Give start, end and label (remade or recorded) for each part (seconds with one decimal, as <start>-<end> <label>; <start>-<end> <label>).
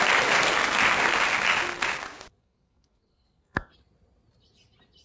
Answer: 0.0-2.4 recorded; 2.4-3.7 remade; 3.7-5.0 recorded